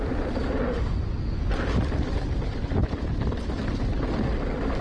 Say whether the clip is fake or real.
real